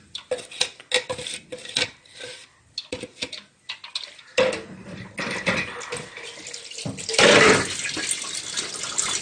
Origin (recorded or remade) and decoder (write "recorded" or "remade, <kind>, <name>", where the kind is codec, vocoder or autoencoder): recorded